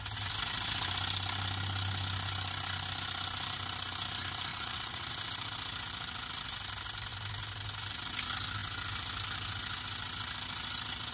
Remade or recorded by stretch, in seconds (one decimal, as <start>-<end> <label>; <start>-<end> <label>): 0.0-4.5 recorded; 4.5-5.1 remade; 5.1-11.1 recorded